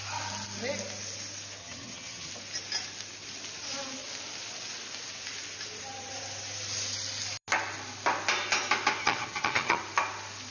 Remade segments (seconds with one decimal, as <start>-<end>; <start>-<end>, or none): 1.6-2.3; 9.0-9.8